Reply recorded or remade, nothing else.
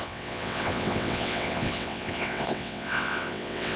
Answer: remade